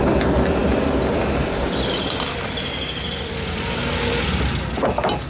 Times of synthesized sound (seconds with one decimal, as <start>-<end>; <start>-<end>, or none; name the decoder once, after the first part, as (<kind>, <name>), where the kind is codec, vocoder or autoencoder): 0.6-3.8 (vocoder, BigVGAN v2)